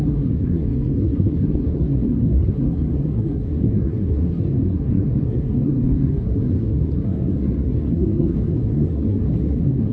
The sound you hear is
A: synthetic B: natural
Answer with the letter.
A